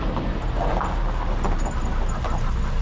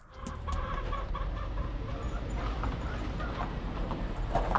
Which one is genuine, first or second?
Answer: first